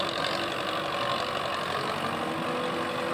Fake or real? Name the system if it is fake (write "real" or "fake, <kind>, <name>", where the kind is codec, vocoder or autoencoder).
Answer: real